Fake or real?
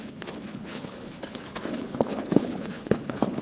fake